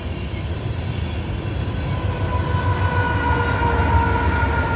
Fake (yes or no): no